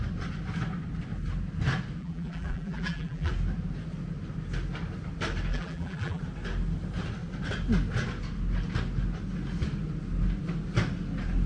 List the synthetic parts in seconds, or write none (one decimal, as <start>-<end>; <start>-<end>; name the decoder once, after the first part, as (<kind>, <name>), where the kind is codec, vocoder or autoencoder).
2.0-3.3 (vocoder, BigVGAN v2); 5.5-6.2